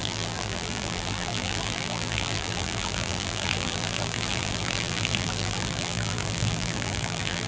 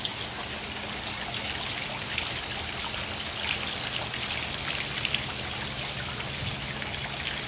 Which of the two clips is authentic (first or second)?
second